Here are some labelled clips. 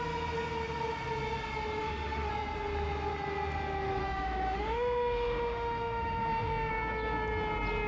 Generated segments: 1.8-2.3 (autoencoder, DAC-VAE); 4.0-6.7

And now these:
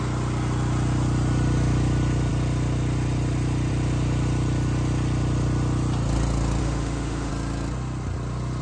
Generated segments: 6.6-7.3 (autoencoder, DAC-VAE)